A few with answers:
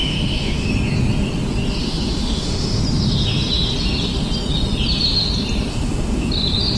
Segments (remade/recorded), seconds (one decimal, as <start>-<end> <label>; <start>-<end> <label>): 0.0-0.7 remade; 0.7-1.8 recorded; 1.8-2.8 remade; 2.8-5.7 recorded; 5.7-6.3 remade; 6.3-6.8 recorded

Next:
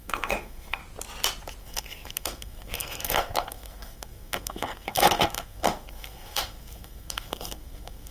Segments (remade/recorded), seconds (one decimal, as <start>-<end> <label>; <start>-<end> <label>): 0.0-0.8 remade; 0.8-1.6 recorded; 1.6-8.1 remade

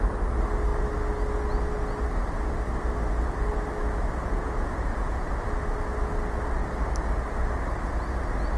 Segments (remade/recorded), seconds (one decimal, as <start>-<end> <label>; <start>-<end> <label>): 0.0-4.2 recorded; 4.2-5.3 remade; 5.3-8.6 recorded

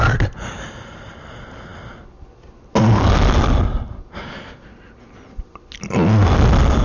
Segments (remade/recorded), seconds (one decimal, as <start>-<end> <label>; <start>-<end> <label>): 0.0-6.8 recorded